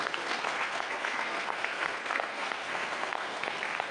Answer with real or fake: fake